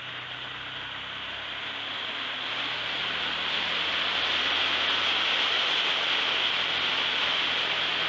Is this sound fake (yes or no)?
no